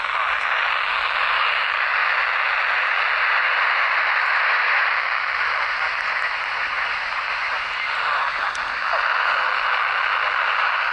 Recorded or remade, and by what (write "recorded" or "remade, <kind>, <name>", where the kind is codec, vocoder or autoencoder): recorded